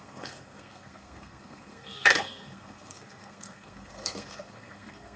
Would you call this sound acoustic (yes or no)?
no